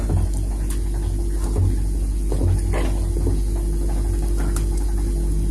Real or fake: real